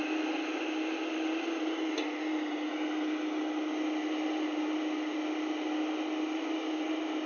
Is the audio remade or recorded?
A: recorded